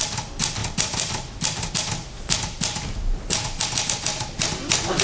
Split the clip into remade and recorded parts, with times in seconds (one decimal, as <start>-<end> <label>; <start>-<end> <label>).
0.0-5.0 recorded